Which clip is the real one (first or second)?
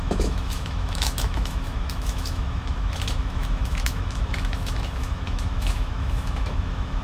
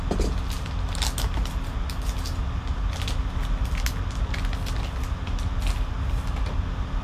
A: second